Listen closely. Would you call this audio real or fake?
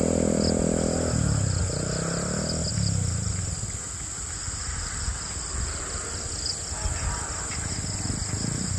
real